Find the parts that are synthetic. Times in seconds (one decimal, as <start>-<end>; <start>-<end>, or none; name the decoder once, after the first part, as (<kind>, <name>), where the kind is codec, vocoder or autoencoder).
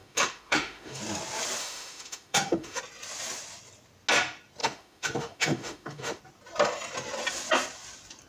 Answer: 0.0-1.0 (autoencoder, DAC-VAE); 1.6-2.8; 4.6-6.2